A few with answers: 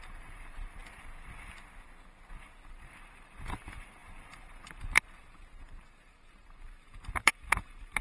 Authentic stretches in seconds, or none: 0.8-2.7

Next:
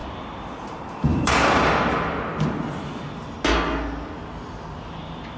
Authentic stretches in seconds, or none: 0.0-0.7; 2.3-5.0

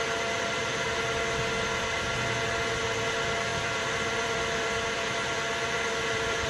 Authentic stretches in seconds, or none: 0.0-3.5

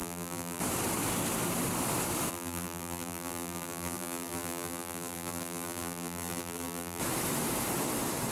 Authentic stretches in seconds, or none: 0.6-2.3; 7.0-8.3